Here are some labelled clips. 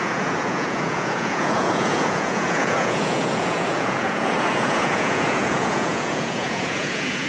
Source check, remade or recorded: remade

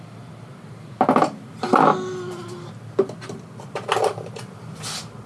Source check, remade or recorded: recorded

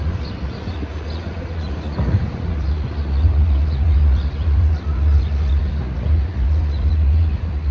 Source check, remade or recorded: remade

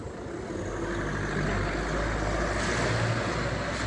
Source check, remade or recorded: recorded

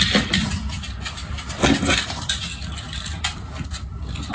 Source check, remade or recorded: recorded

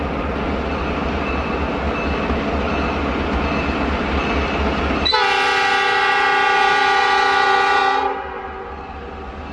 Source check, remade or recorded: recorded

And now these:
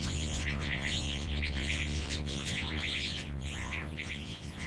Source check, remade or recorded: remade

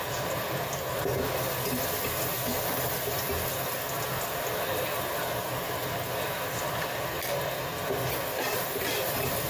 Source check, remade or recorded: recorded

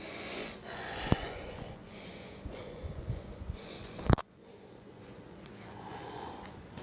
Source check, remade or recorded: remade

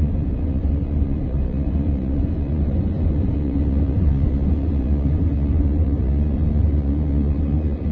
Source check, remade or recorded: remade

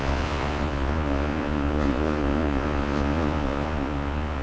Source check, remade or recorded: remade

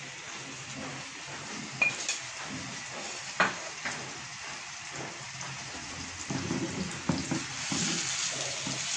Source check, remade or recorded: recorded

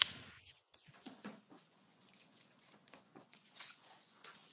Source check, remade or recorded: remade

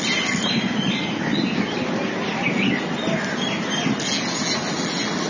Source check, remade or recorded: recorded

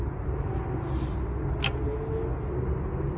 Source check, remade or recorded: recorded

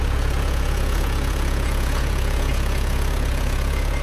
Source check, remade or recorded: remade